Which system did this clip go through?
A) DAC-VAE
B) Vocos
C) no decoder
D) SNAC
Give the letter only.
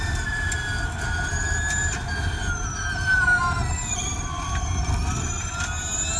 C